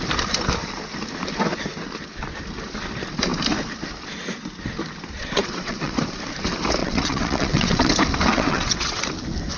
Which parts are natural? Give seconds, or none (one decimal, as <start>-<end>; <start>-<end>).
0.0-5.2; 6.0-6.8; 7.9-8.3; 9.0-9.6